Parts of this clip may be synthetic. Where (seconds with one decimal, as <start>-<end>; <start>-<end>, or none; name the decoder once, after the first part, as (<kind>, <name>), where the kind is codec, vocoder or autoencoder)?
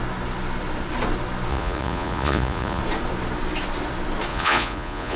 1.5-2.8 (vocoder, Vocos); 4.3-5.2